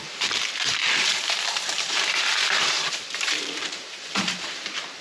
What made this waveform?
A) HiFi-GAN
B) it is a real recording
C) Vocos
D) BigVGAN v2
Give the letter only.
D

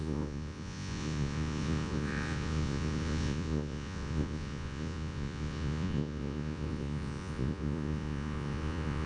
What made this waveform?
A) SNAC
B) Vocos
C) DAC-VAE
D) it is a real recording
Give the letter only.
B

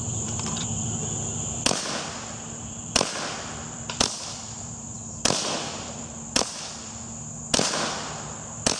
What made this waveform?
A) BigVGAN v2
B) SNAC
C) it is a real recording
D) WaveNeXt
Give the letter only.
A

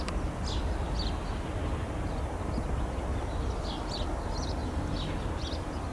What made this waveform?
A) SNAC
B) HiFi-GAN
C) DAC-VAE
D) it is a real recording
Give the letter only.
D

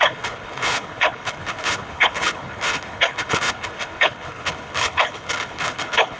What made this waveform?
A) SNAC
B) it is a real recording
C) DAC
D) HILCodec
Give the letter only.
D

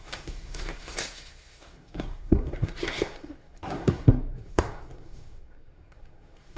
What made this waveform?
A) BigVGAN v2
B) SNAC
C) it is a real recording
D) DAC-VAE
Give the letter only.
B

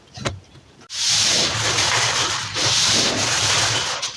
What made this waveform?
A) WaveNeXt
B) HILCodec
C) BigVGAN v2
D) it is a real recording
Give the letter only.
C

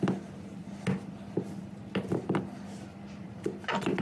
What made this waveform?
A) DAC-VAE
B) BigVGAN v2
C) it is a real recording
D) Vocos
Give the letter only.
C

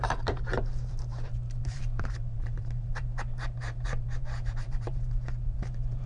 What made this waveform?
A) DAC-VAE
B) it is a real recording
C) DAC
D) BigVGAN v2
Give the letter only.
D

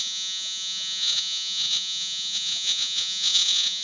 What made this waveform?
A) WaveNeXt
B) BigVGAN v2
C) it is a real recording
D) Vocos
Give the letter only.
D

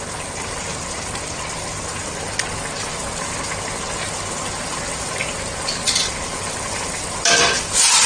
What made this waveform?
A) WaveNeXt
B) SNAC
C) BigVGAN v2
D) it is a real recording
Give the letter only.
D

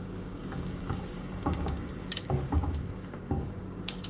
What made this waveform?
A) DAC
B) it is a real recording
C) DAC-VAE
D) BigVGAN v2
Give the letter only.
A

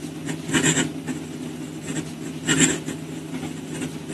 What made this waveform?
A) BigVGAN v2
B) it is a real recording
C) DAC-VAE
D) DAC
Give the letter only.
B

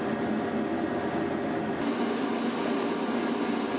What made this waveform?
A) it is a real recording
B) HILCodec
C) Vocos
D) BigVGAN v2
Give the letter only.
A